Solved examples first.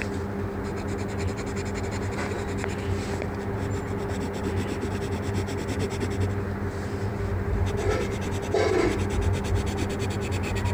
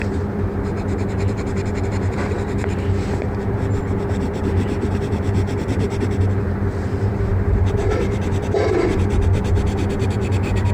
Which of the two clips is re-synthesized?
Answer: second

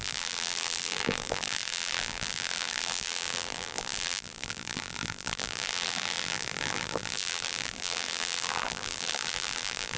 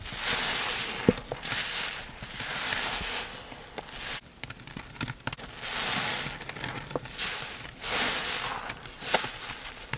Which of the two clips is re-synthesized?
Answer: first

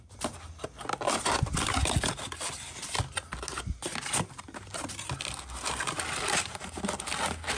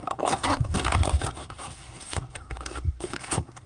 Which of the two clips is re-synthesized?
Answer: second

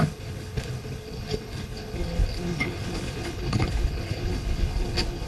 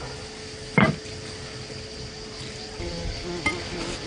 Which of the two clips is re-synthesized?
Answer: first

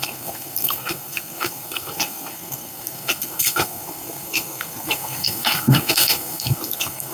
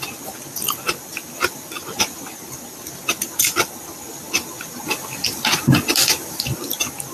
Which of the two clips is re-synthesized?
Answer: first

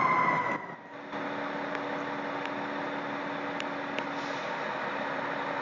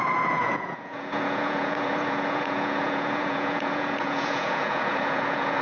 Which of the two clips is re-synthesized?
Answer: second